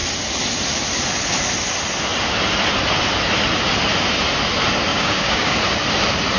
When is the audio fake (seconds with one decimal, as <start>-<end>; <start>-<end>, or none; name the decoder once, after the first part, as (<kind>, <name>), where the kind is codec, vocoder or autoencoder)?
4.9-5.6 (codec, DAC)